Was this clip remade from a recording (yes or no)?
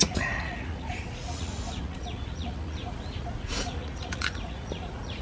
yes